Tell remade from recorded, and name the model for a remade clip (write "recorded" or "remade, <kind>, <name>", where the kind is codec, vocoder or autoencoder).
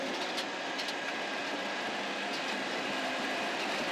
recorded